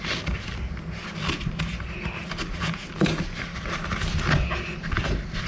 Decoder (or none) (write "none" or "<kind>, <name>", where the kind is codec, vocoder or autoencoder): none